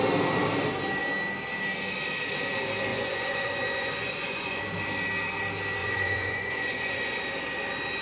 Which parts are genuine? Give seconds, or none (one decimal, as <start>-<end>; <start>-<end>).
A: 0.0-2.9; 4.6-5.8; 7.2-8.0